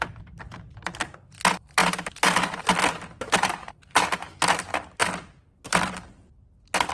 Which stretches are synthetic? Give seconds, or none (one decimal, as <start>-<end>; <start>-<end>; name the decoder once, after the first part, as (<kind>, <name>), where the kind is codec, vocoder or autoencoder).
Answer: none